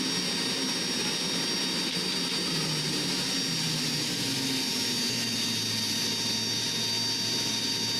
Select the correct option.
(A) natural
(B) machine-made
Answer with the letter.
A